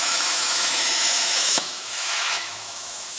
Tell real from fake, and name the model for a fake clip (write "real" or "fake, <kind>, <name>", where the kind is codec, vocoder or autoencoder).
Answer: fake, autoencoder, DAC-VAE